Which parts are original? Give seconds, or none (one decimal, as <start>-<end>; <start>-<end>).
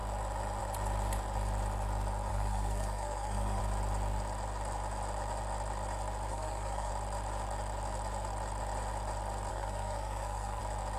0.0-2.3; 3.6-6.3; 6.9-9.5; 10.6-11.0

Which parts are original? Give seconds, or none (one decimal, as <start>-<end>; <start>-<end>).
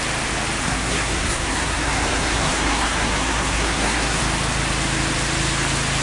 0.0-0.6; 4.2-6.0